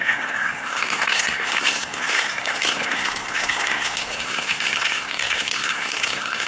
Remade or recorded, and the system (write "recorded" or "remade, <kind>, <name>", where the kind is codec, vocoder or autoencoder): remade, codec, SNAC